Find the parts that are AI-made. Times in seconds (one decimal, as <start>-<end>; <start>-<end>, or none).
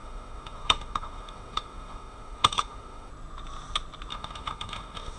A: 0.0-3.1; 4.1-5.2